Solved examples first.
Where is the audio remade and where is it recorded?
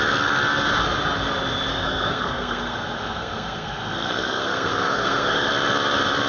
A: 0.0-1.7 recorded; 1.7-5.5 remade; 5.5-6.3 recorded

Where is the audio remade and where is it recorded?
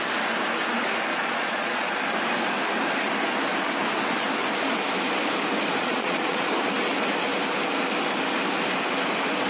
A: 0.0-1.1 recorded; 1.1-1.9 remade; 1.9-5.8 recorded; 5.8-6.5 remade; 6.5-9.5 recorded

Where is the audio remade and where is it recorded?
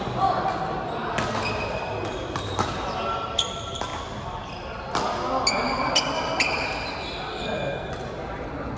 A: 0.0-7.3 recorded; 7.3-7.9 remade; 7.9-8.8 recorded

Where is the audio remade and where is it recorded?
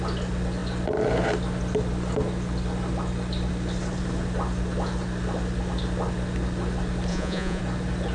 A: 0.0-7.1 recorded; 7.1-7.6 remade; 7.6-8.1 recorded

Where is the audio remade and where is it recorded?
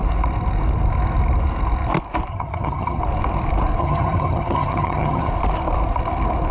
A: 0.0-2.3 recorded; 2.3-3.0 remade; 3.0-3.8 recorded; 3.8-5.3 remade; 5.3-6.5 recorded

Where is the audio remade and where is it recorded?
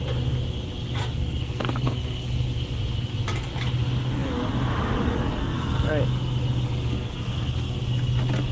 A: 0.0-1.0 recorded; 1.0-2.3 remade; 2.3-5.4 recorded; 5.4-5.9 remade; 5.9-6.9 recorded; 6.9-7.5 remade; 7.5-8.5 recorded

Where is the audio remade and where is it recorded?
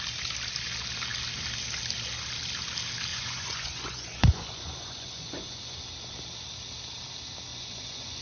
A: 0.0-3.1 recorded; 3.1-5.8 remade; 5.8-7.5 recorded; 7.5-8.2 remade